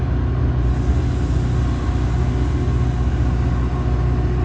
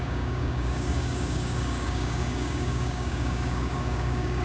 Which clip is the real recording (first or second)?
first